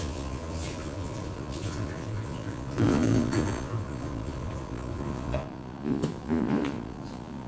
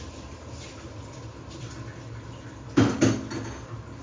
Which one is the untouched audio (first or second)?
second